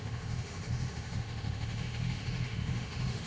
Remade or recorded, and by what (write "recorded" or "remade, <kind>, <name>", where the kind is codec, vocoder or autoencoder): remade, autoencoder, DAC-VAE